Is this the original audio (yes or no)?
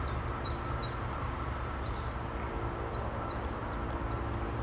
yes